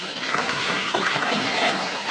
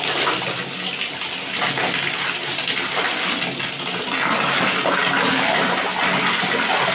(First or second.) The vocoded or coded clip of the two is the first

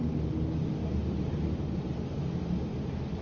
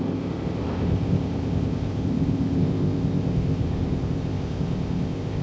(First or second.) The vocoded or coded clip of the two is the second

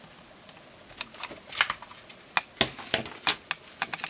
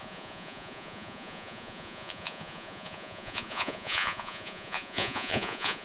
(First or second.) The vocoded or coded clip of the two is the second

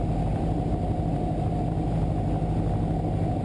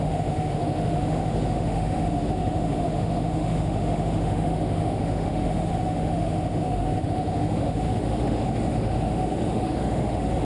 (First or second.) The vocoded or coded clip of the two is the second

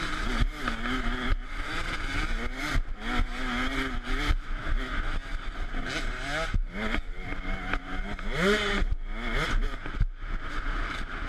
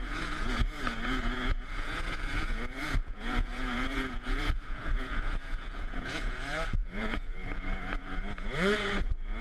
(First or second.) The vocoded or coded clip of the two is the second